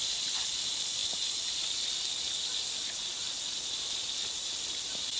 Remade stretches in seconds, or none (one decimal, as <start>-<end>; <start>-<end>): none